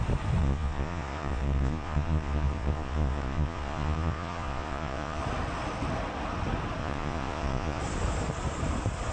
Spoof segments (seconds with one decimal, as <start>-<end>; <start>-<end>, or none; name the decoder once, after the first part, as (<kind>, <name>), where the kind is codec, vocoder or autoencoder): 0.4-5.2 (vocoder, Vocos); 6.8-7.8